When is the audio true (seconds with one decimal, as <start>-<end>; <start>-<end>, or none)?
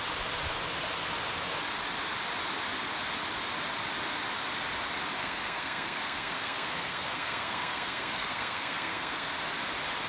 0.0-5.2; 9.3-10.1